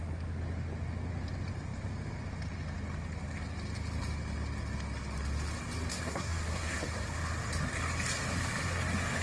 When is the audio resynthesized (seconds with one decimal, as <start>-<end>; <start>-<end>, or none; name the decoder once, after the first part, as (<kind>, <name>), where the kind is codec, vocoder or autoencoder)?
5.9-6.8 (codec, SNAC)